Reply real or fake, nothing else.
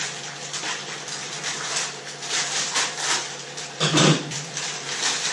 fake